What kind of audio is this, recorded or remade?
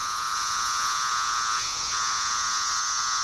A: remade